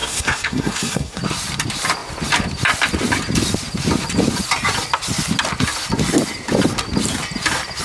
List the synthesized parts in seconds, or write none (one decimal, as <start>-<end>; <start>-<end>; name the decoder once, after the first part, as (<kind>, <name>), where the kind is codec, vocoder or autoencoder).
0.0-1.2 (codec, SNAC)